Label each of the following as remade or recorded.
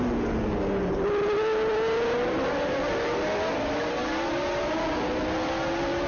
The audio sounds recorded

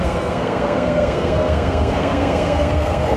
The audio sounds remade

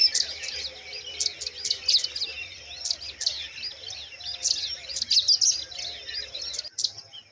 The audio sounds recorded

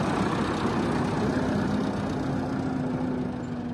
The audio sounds recorded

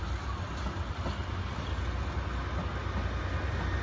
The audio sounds recorded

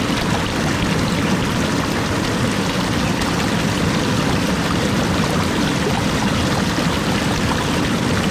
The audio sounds recorded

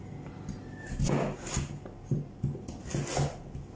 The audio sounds recorded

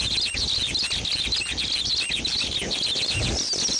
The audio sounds recorded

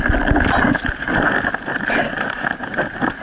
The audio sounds recorded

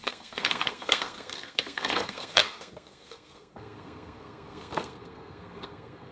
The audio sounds remade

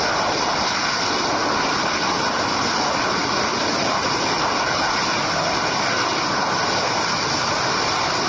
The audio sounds recorded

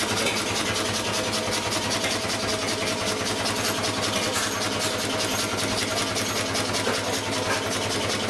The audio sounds recorded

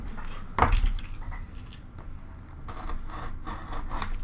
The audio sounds recorded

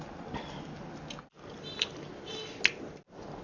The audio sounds recorded